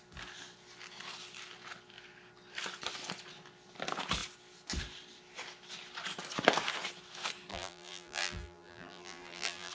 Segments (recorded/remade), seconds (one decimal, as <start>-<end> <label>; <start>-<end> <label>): 0.0-7.5 recorded; 7.5-9.7 remade